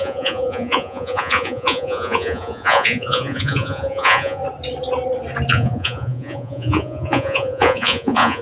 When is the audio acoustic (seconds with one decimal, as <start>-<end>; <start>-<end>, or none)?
4.4-5.5

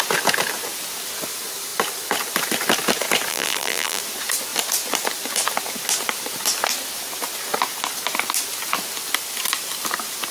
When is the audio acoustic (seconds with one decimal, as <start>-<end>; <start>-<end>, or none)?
0.0-3.3; 4.0-10.3

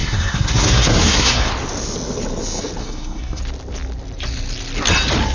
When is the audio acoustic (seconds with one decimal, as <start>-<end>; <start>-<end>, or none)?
1.5-2.8; 3.4-5.3